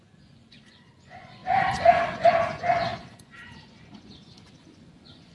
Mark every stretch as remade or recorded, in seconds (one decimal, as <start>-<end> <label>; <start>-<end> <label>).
0.0-5.3 remade